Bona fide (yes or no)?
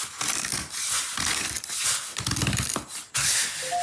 yes